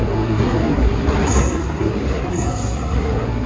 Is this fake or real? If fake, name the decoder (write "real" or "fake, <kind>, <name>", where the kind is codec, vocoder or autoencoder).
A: fake, codec, SNAC